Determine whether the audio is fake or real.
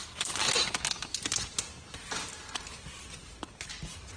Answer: real